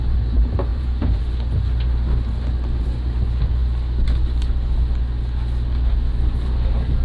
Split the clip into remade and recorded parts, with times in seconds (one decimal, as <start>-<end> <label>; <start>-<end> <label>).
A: 0.0-0.7 recorded; 0.7-1.2 remade; 1.2-7.0 recorded